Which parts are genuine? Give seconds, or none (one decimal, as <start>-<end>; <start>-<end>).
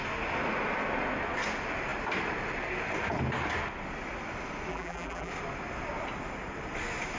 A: 0.0-4.7; 5.3-7.2